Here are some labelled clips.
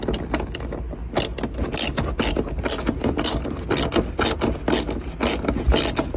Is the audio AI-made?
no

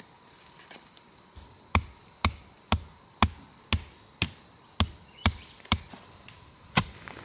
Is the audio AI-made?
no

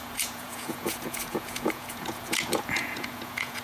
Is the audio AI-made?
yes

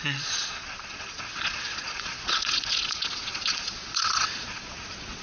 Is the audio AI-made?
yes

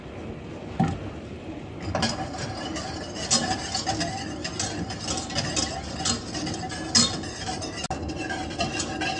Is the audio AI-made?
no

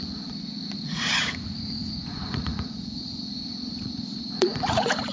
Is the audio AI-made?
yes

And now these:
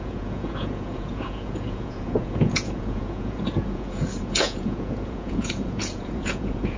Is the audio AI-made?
yes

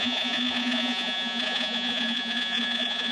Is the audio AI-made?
yes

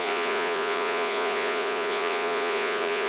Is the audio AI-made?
yes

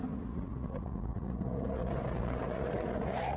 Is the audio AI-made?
yes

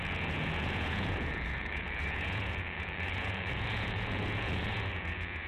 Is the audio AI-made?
yes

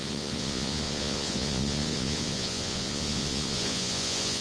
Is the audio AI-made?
yes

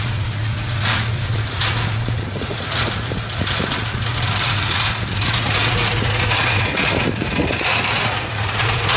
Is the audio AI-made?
yes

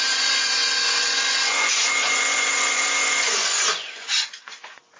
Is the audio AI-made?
yes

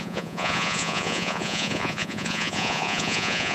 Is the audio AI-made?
yes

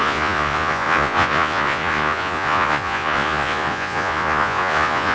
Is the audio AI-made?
yes